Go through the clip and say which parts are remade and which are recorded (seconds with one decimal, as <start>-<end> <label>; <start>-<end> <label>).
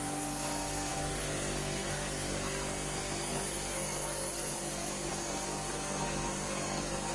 0.0-7.1 remade